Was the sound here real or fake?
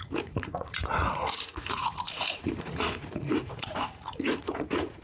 fake